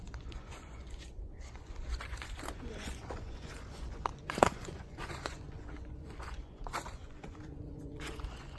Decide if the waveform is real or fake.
fake